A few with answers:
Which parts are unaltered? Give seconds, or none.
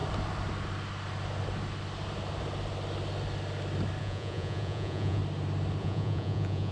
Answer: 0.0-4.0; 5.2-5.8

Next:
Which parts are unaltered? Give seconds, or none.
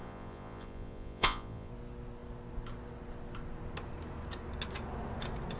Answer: 1.7-5.6